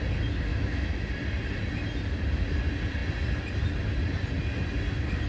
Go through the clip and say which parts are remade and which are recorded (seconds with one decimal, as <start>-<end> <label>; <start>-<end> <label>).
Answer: 0.0-0.5 recorded; 0.5-1.1 remade; 1.1-5.3 recorded